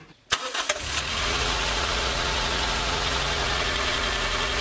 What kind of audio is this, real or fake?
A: fake